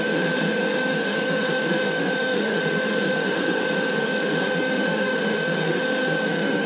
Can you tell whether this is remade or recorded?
remade